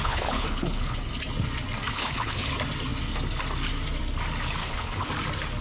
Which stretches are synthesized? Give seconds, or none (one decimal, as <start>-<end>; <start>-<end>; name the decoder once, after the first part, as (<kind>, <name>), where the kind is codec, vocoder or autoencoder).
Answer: 0.0-1.1 (codec, HILCodec); 1.9-2.5; 4.6-5.1